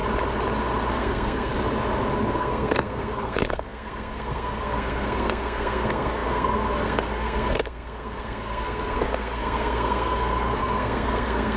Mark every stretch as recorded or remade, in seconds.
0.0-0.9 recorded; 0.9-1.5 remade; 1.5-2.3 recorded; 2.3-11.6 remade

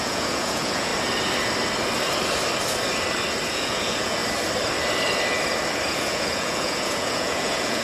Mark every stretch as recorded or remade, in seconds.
0.0-0.9 remade; 0.9-3.5 recorded; 3.5-4.2 remade; 4.2-5.9 recorded; 5.9-7.8 remade

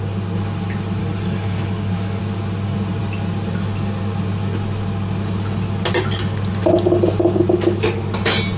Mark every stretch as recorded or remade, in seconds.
0.0-1.0 recorded; 1.0-2.2 remade; 2.2-8.6 recorded